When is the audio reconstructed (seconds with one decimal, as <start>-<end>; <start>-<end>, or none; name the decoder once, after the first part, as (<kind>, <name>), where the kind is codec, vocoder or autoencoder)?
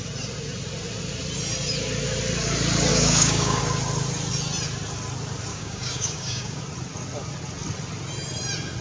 2.9-3.6 (codec, DAC); 5.5-6.6